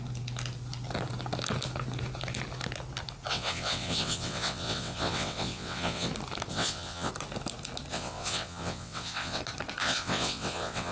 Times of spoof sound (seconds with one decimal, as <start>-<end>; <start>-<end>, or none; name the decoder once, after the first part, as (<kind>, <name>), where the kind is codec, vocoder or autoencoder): 3.3-6.1 (vocoder, WaveNeXt); 6.5-7.1; 7.9-9.4; 9.8-10.9